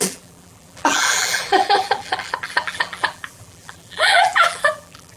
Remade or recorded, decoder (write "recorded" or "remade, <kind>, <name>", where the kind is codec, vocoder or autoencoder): remade, vocoder, BigVGAN v2